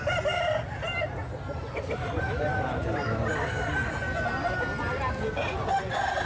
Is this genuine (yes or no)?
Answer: yes